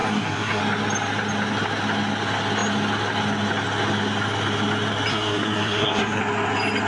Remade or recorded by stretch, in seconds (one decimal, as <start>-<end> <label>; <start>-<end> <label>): 0.0-0.6 remade; 0.6-5.1 recorded; 5.1-6.2 remade; 6.2-6.9 recorded